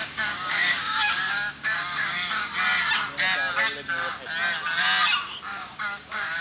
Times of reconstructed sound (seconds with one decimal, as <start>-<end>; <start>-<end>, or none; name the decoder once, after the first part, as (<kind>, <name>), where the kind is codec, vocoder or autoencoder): 0.0-2.5 (codec, DAC); 5.5-6.4